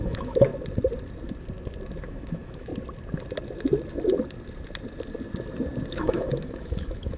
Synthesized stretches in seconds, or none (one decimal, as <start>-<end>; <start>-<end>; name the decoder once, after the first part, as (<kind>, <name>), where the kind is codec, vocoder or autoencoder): 0.0-0.5 (autoencoder, DAC-VAE); 2.0-2.7; 5.9-7.2